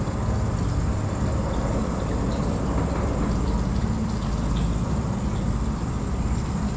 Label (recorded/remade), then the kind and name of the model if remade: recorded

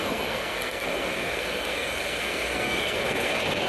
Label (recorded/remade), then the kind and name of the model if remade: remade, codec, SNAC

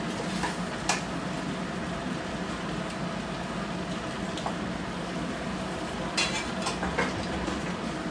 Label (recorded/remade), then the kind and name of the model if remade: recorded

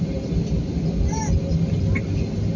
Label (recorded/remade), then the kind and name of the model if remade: recorded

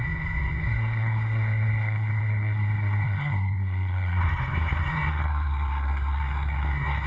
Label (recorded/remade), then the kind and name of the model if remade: remade, codec, SNAC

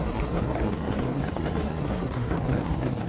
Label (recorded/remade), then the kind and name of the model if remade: remade, codec, SNAC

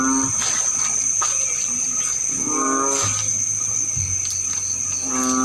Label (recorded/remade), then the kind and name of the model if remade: recorded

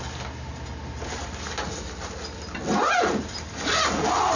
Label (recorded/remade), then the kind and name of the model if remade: recorded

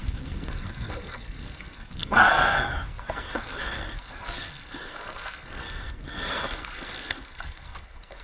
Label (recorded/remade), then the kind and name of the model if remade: remade, codec, SNAC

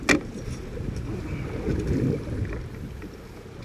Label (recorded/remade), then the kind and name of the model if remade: recorded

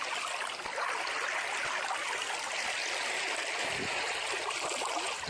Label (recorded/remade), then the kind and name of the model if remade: recorded